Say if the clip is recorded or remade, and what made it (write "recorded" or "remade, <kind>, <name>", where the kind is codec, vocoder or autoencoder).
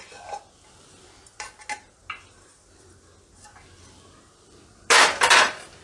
recorded